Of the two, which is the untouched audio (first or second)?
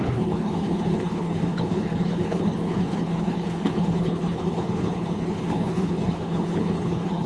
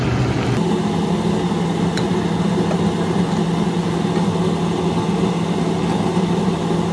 second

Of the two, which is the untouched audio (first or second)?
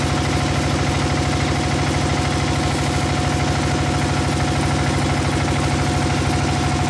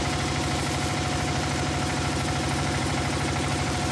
first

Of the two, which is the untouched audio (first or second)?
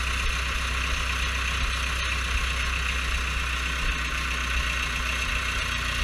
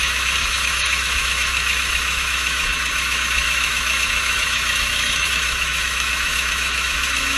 first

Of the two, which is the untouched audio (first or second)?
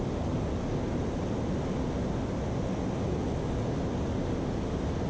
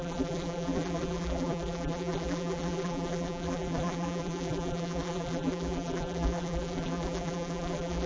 first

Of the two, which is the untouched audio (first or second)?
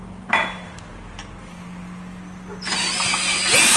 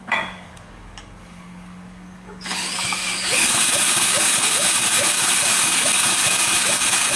first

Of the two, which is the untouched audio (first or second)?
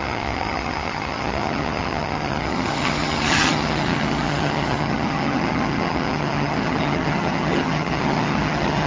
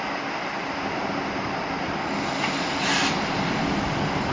second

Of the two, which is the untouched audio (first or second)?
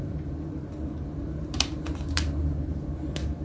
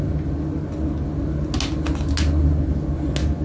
second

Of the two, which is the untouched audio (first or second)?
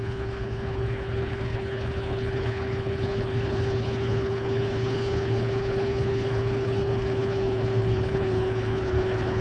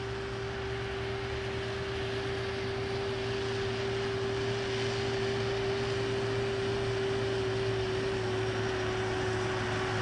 second